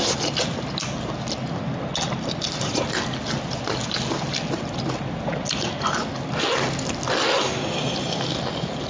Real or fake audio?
real